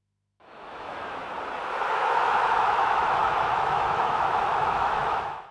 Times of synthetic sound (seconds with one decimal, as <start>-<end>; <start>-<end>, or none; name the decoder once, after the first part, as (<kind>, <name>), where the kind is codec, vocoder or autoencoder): 0.0-1.2 (autoencoder, DAC-VAE); 1.9-5.5